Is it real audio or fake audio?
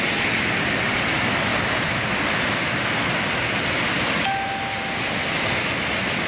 real